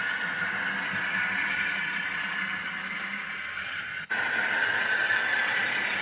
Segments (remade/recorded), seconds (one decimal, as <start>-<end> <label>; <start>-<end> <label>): 0.0-2.8 recorded; 2.8-3.9 remade; 3.9-5.3 recorded; 5.3-6.0 remade